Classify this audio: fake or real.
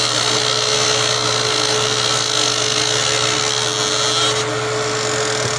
real